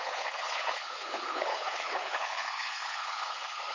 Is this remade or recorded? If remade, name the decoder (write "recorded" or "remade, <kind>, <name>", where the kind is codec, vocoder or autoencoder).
remade, codec, HILCodec